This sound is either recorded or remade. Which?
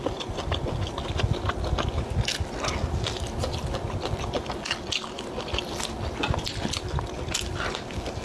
recorded